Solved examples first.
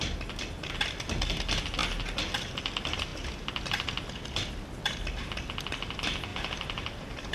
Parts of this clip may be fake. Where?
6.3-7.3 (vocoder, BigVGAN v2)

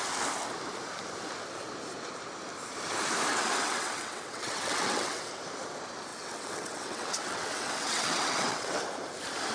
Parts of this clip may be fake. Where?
3.3-5.3 (vocoder, WaveNeXt); 6.1-8.8

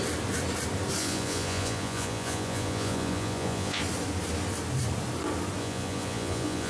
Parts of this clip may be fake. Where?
1.0-3.8 (vocoder, Vocos); 5.6-6.7

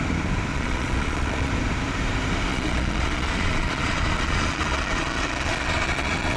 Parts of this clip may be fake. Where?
0.5-1.5 (vocoder, Vocos); 2.5-6.4

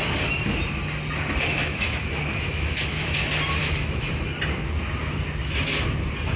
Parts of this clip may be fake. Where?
1.5-3.2 (autoencoder, DAC-VAE); 3.6-4.1

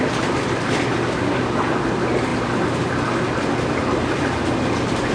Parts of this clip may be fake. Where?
none

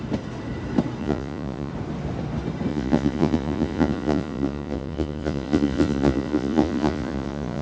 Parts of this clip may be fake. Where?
1.0-1.7 (vocoder, Vocos); 2.7-7.6

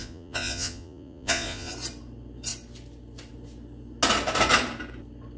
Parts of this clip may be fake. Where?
0.0-1.7 (vocoder, Vocos)